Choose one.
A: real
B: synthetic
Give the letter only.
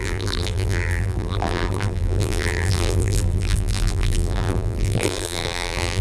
B